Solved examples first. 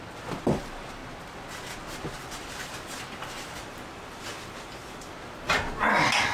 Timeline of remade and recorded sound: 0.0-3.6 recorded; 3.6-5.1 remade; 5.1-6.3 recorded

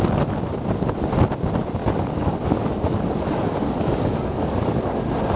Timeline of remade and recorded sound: 0.0-1.8 recorded; 1.8-5.0 remade; 5.0-5.4 recorded

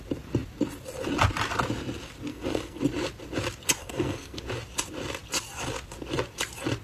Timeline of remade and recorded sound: 0.0-2.3 recorded; 2.3-2.8 remade; 2.8-3.8 recorded; 3.8-4.4 remade; 4.4-6.8 recorded

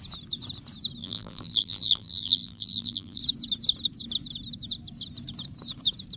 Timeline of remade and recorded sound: 0.0-1.0 recorded; 1.0-3.2 remade; 3.2-6.2 recorded

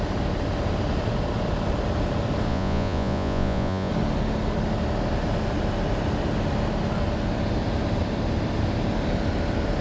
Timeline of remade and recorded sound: 0.0-2.5 recorded; 2.5-3.9 remade; 3.9-9.8 recorded